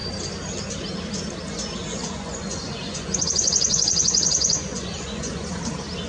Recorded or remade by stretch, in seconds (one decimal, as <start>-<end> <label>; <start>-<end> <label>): 0.0-1.9 recorded; 1.9-5.6 remade; 5.6-6.1 recorded